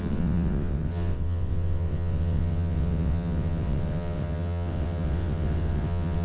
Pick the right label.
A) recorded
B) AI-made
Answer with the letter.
B